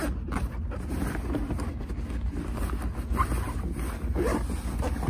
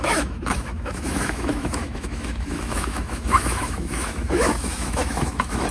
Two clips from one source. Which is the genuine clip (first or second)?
first